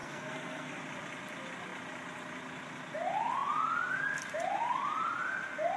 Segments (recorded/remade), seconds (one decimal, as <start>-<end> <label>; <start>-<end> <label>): 0.0-0.8 remade; 0.8-5.8 recorded